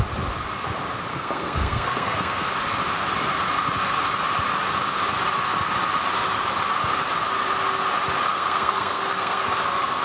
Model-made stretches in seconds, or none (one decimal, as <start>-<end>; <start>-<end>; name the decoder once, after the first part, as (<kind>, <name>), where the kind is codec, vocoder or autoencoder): 1.1-2.5 (codec, SNAC); 8.3-9.5